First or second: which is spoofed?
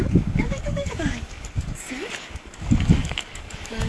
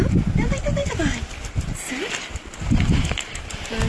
first